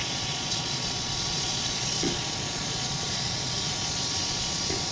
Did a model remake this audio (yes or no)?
yes